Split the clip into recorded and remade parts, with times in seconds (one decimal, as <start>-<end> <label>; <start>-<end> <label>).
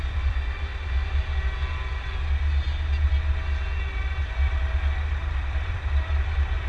0.0-0.7 remade; 0.7-4.2 recorded; 4.2-6.7 remade